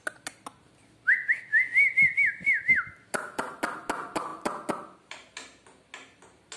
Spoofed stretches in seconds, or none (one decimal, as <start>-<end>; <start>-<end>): none